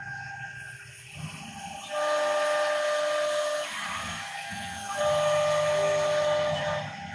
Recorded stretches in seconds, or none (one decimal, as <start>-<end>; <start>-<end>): 0.0-4.0; 5.0-7.1